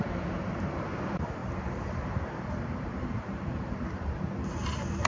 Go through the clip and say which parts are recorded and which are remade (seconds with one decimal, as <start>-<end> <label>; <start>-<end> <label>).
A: 0.0-5.1 remade

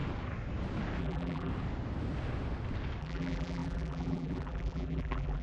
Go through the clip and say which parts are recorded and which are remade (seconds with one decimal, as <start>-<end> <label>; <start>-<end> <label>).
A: 0.0-1.0 recorded; 1.0-1.5 remade; 1.5-3.0 recorded; 3.0-5.4 remade

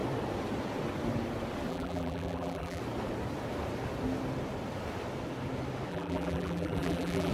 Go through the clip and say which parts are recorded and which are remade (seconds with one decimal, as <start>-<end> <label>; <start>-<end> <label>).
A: 0.0-1.7 recorded; 1.7-2.8 remade; 2.8-5.9 recorded; 5.9-7.3 remade

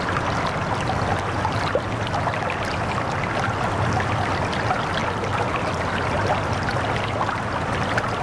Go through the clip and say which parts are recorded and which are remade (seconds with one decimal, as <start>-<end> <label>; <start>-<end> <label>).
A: 0.0-8.2 recorded

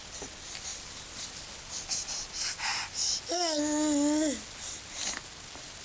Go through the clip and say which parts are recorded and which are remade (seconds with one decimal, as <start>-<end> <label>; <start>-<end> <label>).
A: 0.0-0.7 recorded; 0.7-1.3 remade; 1.3-5.8 recorded

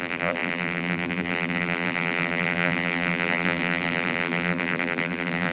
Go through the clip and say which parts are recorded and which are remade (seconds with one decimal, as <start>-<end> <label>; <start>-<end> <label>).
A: 0.0-5.5 remade

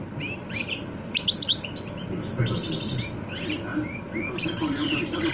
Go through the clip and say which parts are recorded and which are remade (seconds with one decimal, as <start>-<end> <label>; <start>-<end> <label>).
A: 0.0-0.6 recorded; 0.6-2.4 remade; 2.4-3.7 recorded; 3.7-5.3 remade

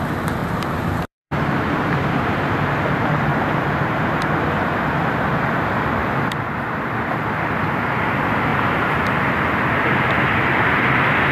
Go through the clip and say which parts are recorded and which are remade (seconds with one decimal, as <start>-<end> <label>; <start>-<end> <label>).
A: 0.0-0.4 recorded; 0.4-5.1 remade; 5.1-6.0 recorded; 6.0-6.8 remade; 6.8-8.5 recorded; 8.5-11.3 remade